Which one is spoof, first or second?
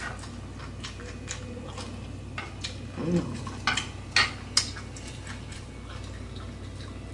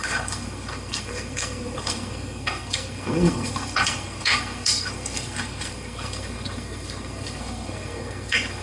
second